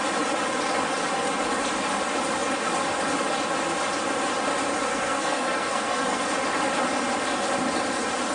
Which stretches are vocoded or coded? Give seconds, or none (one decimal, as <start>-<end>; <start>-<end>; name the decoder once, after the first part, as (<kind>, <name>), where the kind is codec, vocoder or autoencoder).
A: 4.8-6.3 (codec, SNAC)